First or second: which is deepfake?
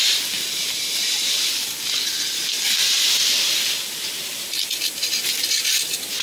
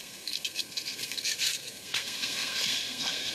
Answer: second